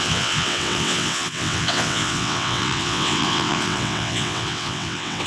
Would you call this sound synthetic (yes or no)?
yes